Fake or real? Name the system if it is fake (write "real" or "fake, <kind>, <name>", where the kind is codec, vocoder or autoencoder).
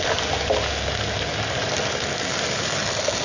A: real